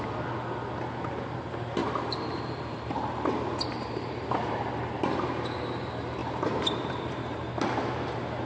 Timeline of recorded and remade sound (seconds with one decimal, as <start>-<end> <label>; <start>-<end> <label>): 0.0-1.8 recorded; 1.8-4.7 remade; 4.7-6.2 recorded; 6.2-7.5 remade; 7.5-8.5 recorded